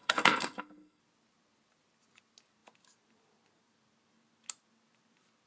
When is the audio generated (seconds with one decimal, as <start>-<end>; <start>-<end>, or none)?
0.0-1.0